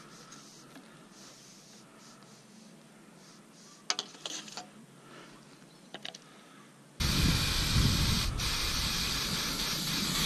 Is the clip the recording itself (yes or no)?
yes